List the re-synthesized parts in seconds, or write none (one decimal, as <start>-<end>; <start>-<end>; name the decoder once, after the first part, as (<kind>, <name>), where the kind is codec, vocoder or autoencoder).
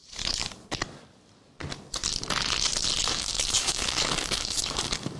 3.1-5.2 (codec, DAC)